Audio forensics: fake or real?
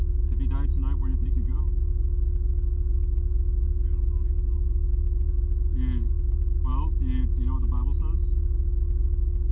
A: real